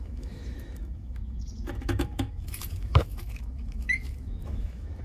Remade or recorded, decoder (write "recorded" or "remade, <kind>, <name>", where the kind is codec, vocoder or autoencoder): remade, autoencoder, DAC-VAE